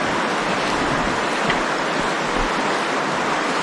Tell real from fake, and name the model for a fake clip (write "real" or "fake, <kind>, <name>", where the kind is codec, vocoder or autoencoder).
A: real